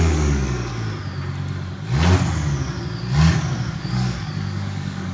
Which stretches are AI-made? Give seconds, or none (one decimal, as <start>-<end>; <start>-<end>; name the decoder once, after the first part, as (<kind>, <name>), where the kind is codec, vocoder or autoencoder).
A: 0.0-0.7 (codec, DAC); 3.7-5.1